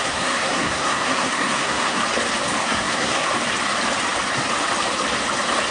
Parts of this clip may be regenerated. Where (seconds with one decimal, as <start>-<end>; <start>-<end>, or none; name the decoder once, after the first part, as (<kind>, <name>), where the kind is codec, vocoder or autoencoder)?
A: 0.0-2.0 (codec, SNAC); 2.6-3.3